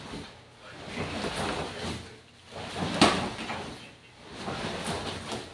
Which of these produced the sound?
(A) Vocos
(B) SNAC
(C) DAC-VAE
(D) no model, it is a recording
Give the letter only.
D